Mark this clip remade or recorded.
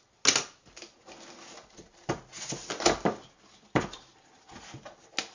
recorded